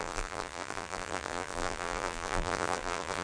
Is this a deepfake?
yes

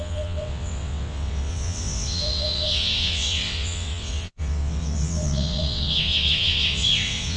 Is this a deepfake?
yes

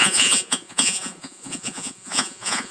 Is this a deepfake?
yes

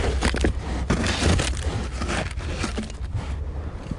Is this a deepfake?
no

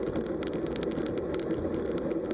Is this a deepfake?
no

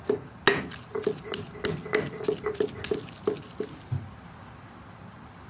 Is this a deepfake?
no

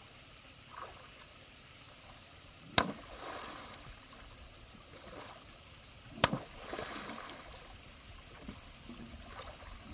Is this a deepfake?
yes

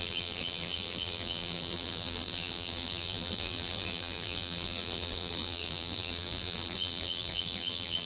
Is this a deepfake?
yes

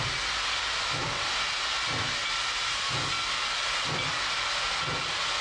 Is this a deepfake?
no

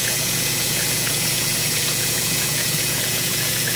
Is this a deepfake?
yes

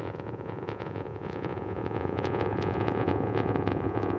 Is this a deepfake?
yes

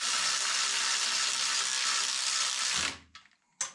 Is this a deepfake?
no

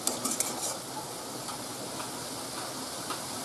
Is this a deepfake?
no